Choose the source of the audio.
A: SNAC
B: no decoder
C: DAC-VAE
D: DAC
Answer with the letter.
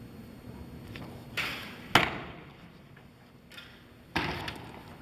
B